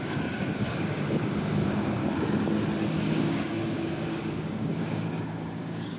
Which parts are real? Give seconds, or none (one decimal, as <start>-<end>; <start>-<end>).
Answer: 2.0-3.0